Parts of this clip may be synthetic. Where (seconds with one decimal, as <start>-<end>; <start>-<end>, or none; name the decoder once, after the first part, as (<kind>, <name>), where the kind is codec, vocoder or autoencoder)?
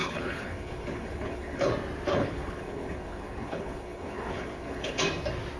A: 0.0-1.7 (codec, HILCodec); 2.1-5.0